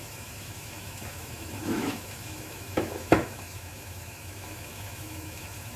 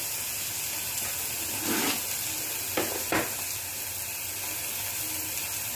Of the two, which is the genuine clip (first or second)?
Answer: second